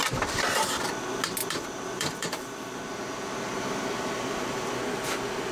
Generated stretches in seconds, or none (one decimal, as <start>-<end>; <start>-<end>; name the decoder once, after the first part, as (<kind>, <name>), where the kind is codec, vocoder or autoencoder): 0.0-0.8 (vocoder, BigVGAN v2); 1.4-4.7